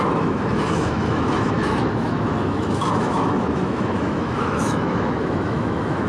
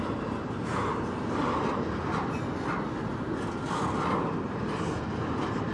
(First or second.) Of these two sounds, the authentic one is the second